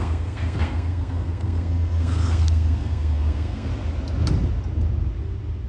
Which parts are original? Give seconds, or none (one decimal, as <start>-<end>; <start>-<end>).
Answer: 3.7-5.7